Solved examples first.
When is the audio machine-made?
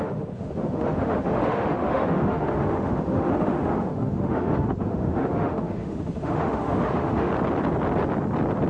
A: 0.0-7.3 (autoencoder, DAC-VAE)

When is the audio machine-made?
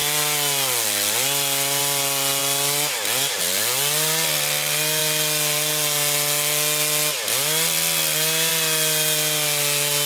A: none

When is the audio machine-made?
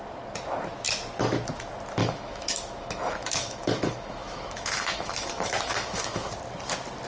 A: 2.0-6.3 (autoencoder, DAC-VAE)